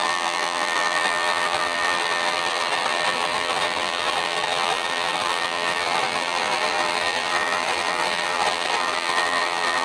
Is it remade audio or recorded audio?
remade